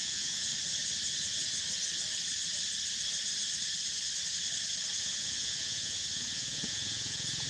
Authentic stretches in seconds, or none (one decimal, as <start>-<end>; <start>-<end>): 0.5-5.0